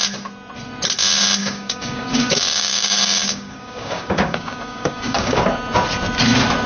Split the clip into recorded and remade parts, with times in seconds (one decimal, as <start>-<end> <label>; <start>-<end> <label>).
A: 0.0-1.4 recorded; 1.4-5.4 remade; 5.4-6.7 recorded